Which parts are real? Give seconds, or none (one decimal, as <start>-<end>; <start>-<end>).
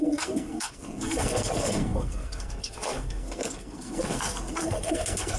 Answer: none